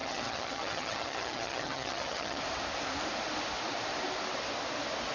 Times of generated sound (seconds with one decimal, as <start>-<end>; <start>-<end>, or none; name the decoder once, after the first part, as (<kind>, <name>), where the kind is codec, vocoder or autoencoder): 0.0-2.4 (vocoder, HiFi-GAN)